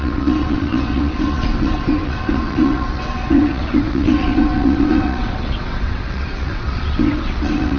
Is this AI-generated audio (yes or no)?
yes